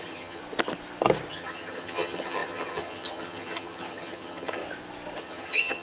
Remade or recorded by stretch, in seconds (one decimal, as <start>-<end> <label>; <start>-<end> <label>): 0.0-0.4 remade; 0.4-1.3 recorded; 1.3-4.6 remade; 4.6-5.2 recorded; 5.2-5.8 remade